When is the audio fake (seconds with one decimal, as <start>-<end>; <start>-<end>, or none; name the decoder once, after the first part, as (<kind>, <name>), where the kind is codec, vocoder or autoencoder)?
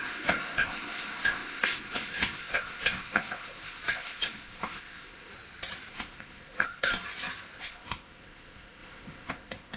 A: 0.0-5.3 (codec, ZipCodec); 5.9-6.9; 7.6-9.8